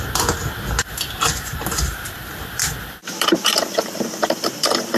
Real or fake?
fake